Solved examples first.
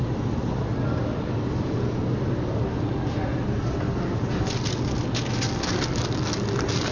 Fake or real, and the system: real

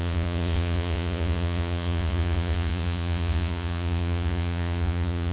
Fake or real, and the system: fake, vocoder, Vocos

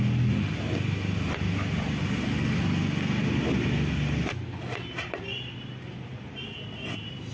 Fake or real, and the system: real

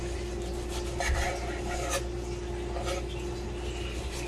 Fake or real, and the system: real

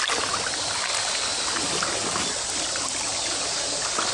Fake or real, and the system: real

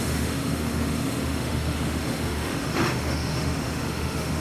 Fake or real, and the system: fake, autoencoder, DAC-VAE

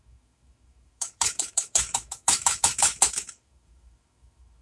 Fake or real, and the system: fake, autoencoder, DAC-VAE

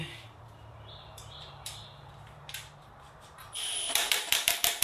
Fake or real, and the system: fake, vocoder, BigVGAN v2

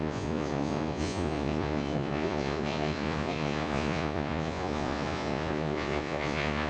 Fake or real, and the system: fake, vocoder, Vocos